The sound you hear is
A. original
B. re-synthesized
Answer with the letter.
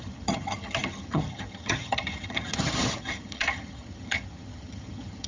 B